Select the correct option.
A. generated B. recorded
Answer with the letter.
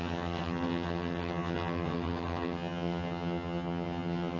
A